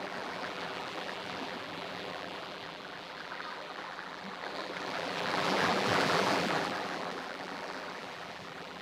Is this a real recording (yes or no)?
no